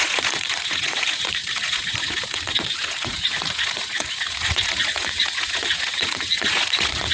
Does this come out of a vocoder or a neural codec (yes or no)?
yes